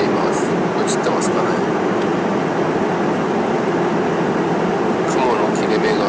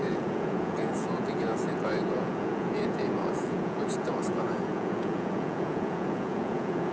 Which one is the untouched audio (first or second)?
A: first